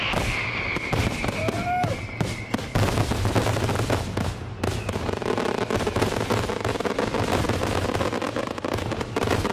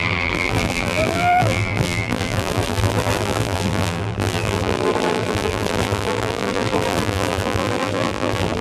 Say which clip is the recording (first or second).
first